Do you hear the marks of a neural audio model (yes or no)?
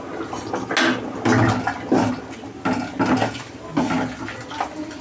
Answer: no